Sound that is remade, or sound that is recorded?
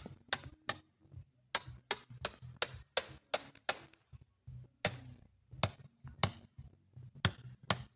recorded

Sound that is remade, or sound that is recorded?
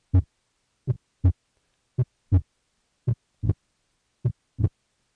recorded